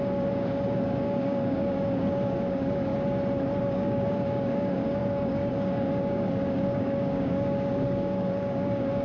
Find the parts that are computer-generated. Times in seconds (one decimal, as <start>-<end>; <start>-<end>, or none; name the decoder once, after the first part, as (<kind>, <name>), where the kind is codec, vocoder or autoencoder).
0.0-2.9 (codec, DAC); 3.6-9.0